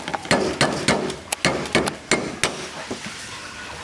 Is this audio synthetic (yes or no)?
no